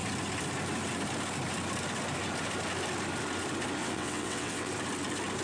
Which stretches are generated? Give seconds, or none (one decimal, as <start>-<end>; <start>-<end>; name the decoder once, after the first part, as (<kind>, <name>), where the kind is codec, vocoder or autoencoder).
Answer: 3.8-4.7 (vocoder, WaveNeXt)